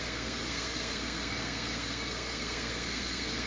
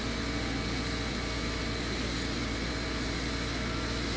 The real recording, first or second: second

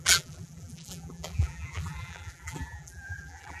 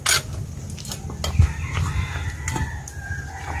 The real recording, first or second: second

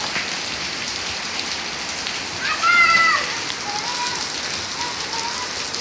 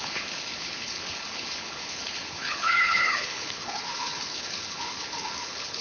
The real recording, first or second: first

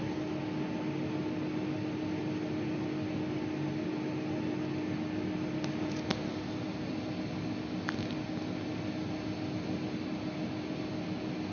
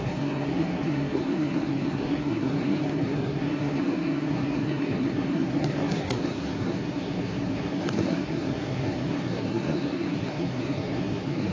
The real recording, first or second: first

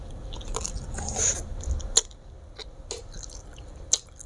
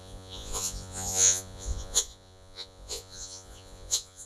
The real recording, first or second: first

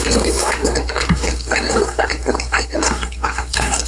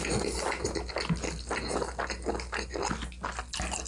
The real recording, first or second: second